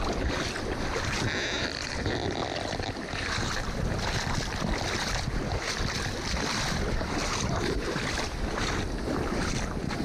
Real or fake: real